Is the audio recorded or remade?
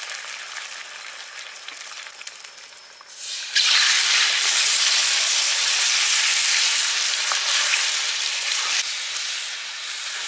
recorded